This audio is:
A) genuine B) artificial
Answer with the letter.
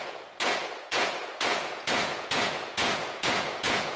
B